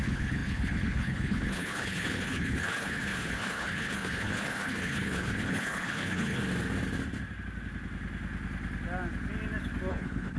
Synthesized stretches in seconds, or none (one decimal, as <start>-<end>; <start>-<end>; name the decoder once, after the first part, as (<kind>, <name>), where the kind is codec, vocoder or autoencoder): 0.0-6.4 (codec, HILCodec); 9.9-10.4